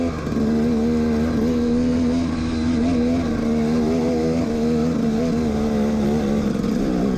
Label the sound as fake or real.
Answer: real